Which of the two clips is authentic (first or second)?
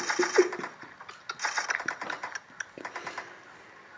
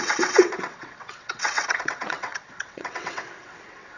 first